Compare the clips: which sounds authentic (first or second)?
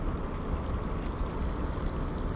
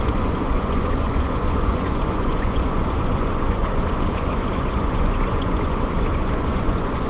first